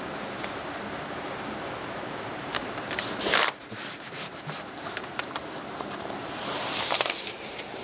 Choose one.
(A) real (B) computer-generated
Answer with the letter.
B